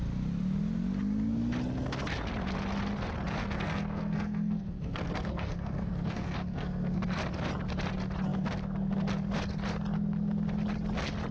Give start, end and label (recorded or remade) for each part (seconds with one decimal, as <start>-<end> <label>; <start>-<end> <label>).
0.0-3.4 recorded; 3.4-7.2 remade; 7.2-11.3 recorded

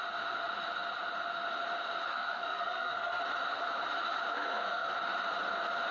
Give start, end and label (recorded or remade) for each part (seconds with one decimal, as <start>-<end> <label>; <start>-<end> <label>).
0.0-2.1 recorded; 2.1-3.2 remade; 3.2-4.3 recorded; 4.3-4.9 remade; 4.9-5.9 recorded